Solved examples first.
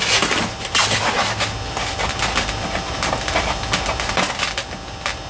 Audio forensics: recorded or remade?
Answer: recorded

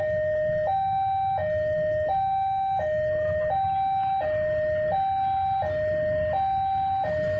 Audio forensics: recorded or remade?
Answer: recorded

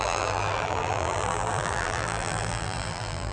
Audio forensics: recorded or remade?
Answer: remade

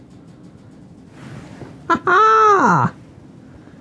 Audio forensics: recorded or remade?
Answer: recorded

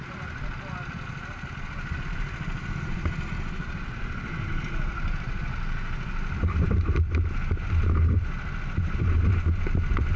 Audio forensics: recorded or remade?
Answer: recorded